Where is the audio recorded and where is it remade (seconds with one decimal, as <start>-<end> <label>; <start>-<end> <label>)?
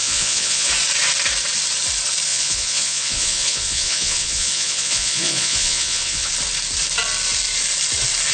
0.0-0.7 remade; 0.7-2.3 recorded; 2.3-6.3 remade; 6.3-8.3 recorded